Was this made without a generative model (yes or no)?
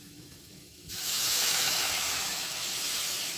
no